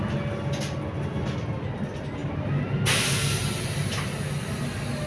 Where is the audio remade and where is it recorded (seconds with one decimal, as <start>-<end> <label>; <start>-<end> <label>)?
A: 0.0-5.1 recorded